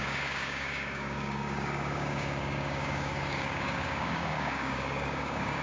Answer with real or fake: fake